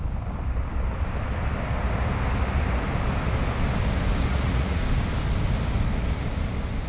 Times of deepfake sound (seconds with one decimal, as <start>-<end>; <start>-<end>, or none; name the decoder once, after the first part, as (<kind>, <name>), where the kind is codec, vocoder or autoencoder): 4.3-4.8 (vocoder, Vocos)